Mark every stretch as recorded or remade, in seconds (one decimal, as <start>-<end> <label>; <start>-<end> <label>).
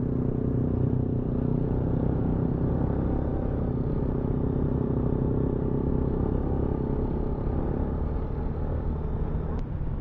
0.0-1.5 recorded; 1.5-2.3 remade; 2.3-3.3 recorded; 3.3-5.9 remade; 5.9-10.0 recorded